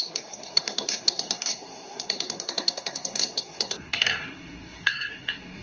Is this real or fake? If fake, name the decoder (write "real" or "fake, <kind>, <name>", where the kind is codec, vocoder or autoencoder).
fake, codec, SNAC